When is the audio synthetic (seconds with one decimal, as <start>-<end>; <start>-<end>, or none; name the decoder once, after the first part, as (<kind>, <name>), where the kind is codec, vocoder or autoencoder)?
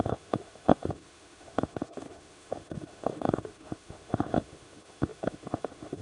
0.0-6.0 (autoencoder, DAC-VAE)